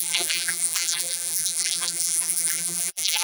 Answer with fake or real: fake